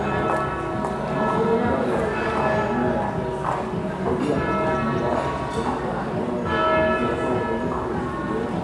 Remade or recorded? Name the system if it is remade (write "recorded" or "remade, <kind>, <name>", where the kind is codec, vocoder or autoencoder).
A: recorded